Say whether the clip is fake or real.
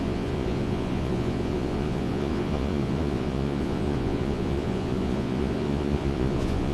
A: fake